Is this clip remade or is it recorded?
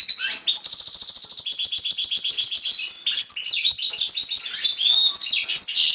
recorded